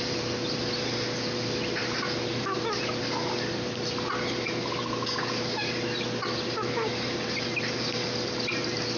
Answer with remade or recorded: recorded